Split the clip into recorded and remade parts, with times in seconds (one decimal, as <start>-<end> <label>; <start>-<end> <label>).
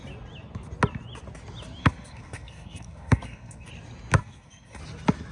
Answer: 0.0-1.8 recorded; 1.8-3.7 remade; 3.7-4.2 recorded; 4.2-4.8 remade; 4.8-5.3 recorded